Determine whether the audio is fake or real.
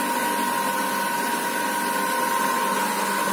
real